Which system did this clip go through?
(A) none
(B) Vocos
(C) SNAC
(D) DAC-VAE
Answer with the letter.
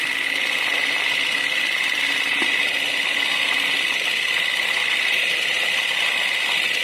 A